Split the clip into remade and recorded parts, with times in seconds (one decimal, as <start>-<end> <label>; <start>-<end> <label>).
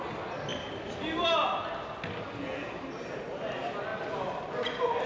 0.0-5.1 recorded